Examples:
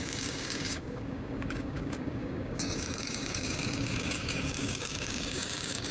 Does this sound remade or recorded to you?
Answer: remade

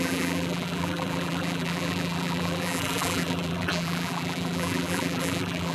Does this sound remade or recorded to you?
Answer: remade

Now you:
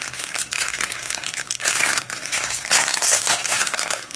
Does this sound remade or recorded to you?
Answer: remade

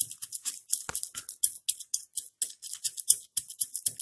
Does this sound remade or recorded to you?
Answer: recorded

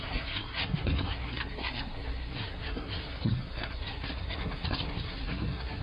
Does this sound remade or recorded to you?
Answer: remade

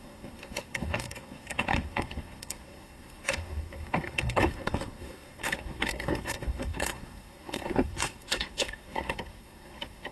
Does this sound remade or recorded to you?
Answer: remade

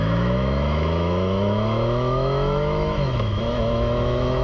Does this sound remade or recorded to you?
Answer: remade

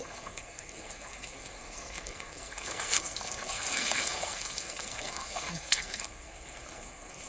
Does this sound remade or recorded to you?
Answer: remade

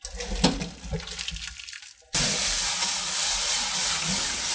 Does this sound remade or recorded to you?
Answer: recorded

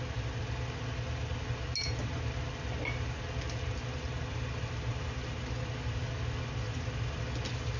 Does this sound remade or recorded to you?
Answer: recorded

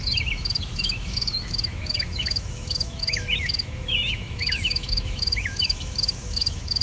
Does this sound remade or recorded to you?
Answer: remade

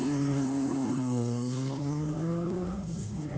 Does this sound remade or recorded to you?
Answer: remade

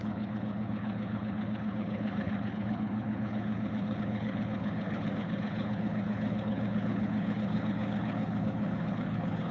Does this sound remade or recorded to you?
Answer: remade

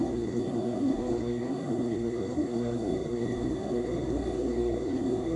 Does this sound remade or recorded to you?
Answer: remade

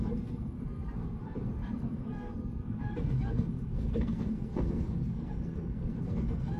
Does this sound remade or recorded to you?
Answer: remade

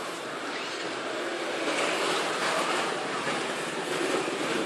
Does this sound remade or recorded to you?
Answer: remade